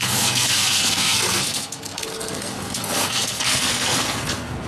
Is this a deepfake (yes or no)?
yes